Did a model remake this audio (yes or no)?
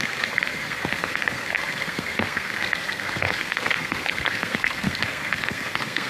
yes